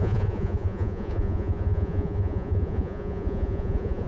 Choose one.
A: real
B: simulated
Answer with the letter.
B